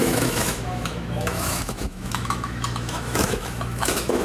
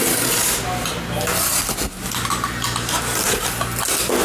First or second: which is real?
second